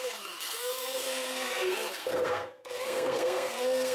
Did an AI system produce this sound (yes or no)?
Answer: yes